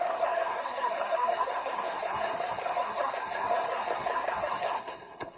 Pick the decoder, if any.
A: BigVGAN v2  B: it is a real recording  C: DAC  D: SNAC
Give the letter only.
D